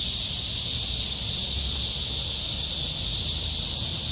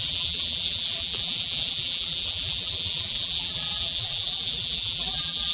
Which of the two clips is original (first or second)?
first